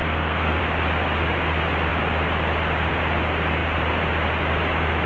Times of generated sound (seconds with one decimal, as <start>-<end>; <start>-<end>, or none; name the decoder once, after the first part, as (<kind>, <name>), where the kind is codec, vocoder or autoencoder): 0.0-0.6 (codec, SNAC)